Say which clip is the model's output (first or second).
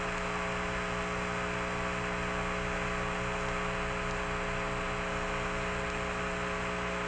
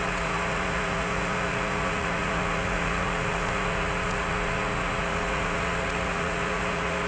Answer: second